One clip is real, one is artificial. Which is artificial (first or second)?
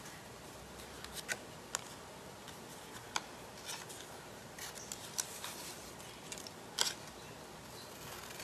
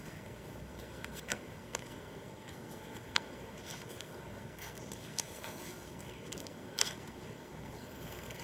second